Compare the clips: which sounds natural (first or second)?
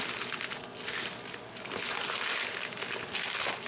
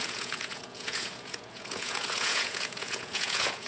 first